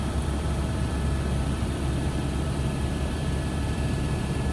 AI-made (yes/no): yes